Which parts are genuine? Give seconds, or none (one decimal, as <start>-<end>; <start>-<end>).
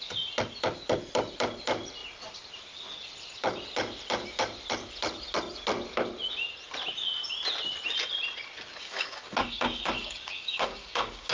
0.0-8.8